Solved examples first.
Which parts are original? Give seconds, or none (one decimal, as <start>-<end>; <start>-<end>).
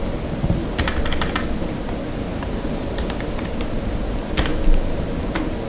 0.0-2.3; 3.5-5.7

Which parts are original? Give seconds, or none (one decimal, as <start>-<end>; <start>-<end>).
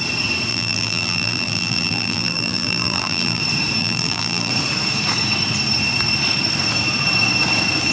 0.0-0.5; 3.4-3.8; 4.5-7.9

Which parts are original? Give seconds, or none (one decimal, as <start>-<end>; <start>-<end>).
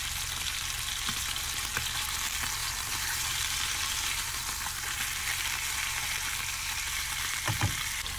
0.0-2.6; 7.5-8.2